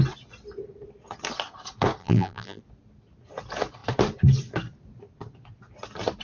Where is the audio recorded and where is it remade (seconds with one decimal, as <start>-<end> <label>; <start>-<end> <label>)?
0.0-2.0 recorded; 2.0-2.6 remade; 2.6-6.2 recorded